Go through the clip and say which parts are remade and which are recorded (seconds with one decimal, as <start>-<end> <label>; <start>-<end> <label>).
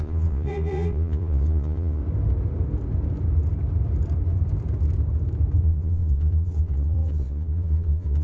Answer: 0.0-2.0 remade; 2.0-5.6 recorded; 5.6-8.2 remade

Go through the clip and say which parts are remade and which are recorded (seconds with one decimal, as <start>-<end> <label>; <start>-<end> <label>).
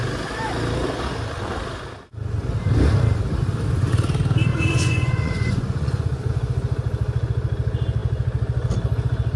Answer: 0.0-4.5 recorded; 4.5-6.3 remade; 6.3-9.4 recorded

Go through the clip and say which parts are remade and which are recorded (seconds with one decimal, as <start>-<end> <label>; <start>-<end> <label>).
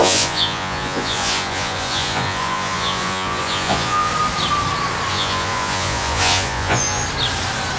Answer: 0.0-4.1 remade; 4.1-5.1 recorded; 5.1-7.0 remade; 7.0-7.8 recorded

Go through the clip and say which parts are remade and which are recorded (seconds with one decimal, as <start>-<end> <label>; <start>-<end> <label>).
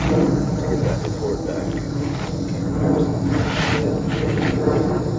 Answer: 0.0-0.8 recorded; 0.8-1.3 remade; 1.3-5.2 recorded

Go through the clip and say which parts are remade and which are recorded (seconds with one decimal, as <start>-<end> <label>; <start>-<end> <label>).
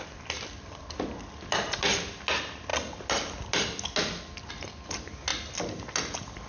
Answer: 0.0-6.5 recorded